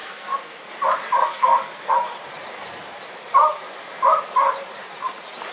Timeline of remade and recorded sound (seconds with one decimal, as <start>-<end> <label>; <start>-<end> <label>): 0.0-0.7 remade; 0.7-1.2 recorded; 1.2-1.9 remade; 1.9-5.5 recorded

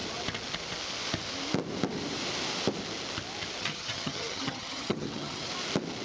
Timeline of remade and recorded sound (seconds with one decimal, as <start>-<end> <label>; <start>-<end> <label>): 0.0-3.6 recorded; 3.6-5.5 remade; 5.5-6.0 recorded